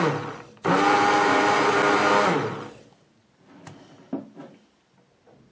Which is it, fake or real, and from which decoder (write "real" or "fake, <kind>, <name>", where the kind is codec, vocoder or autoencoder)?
real